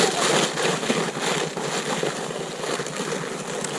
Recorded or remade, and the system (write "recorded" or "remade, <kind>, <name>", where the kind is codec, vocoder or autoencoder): recorded